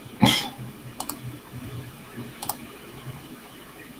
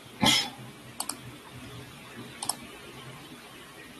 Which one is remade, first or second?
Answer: first